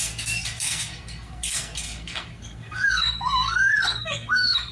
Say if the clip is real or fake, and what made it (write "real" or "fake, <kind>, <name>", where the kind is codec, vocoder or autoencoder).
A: fake, codec, SNAC